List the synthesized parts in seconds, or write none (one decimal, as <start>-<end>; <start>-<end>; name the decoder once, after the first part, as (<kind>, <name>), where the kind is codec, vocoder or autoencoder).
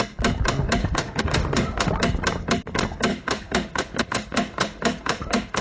0.8-1.9 (autoencoder, DAC-VAE); 3.1-5.6